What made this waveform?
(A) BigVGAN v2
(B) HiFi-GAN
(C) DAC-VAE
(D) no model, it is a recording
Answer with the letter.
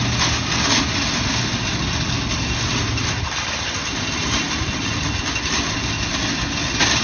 D